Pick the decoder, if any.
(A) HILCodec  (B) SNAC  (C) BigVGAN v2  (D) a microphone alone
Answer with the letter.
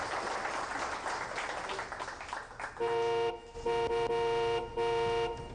D